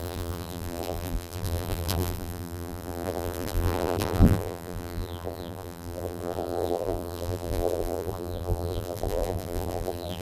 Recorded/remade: remade